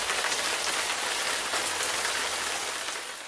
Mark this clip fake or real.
real